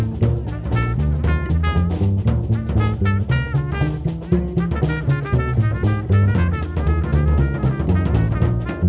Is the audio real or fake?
real